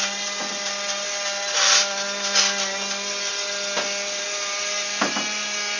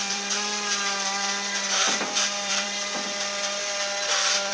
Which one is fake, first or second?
second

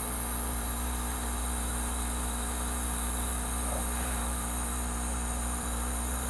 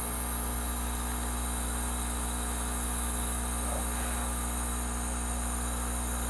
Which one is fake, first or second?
first